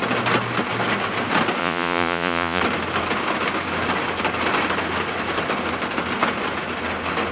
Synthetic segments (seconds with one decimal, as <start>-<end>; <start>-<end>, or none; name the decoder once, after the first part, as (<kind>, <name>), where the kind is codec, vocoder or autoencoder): 1.6-2.6 (vocoder, Vocos)